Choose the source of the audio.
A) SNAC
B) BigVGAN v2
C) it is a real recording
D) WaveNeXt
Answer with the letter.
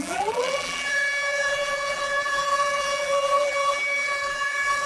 B